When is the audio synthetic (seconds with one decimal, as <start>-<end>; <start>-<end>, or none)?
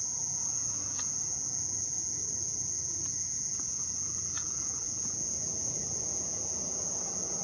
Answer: 0.0-7.4